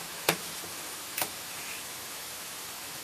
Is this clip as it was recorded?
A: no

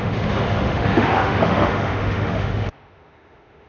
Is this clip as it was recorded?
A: no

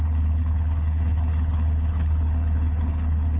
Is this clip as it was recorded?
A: no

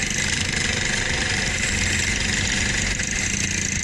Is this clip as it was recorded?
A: yes